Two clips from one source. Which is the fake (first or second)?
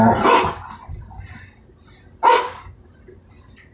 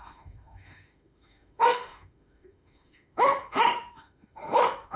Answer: second